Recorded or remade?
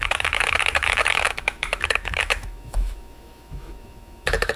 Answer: remade